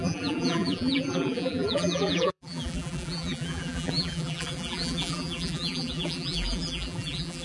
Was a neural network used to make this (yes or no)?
yes